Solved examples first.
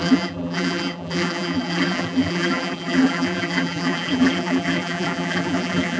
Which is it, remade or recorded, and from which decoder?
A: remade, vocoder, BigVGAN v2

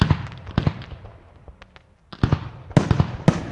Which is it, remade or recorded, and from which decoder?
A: recorded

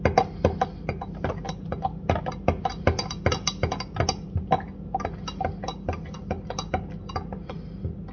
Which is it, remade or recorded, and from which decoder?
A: recorded